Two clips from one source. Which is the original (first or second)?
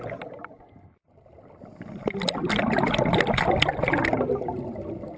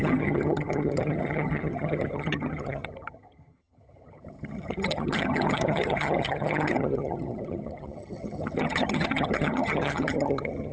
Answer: first